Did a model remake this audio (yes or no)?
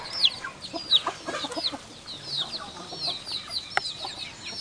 no